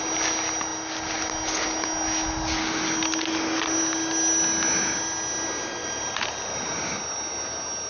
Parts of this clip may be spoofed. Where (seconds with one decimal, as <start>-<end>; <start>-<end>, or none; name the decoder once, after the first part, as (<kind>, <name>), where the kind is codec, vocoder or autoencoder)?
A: 5.8-6.7 (vocoder, BigVGAN v2)